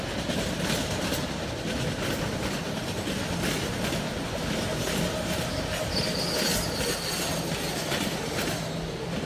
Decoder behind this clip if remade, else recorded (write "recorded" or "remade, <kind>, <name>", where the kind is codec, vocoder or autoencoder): recorded